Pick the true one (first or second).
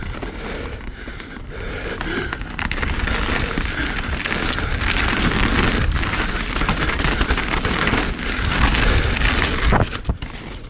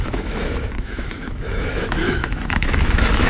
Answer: first